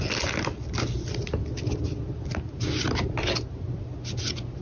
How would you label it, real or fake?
real